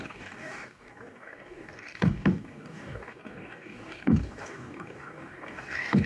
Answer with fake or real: fake